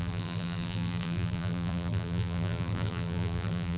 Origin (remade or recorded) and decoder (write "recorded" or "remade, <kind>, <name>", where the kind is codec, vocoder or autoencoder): remade, vocoder, BigVGAN v2